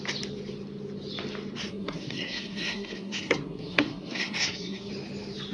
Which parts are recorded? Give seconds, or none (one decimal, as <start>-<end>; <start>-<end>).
0.0-1.6; 4.9-5.5